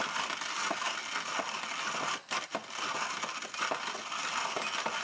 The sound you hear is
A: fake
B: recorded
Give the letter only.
B